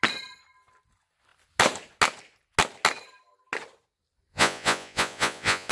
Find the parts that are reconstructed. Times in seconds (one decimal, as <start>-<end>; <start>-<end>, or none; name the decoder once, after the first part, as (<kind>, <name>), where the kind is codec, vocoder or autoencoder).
4.3-5.7 (vocoder, Vocos)